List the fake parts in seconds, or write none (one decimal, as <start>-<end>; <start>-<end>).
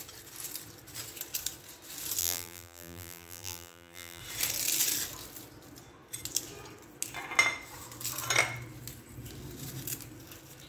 2.2-4.2